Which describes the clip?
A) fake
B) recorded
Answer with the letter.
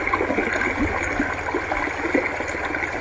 B